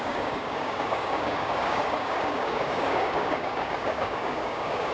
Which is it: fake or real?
fake